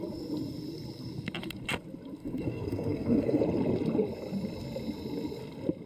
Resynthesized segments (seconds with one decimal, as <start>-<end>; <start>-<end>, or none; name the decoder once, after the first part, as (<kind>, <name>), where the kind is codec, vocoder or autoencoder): 2.2-3.4 (codec, SNAC)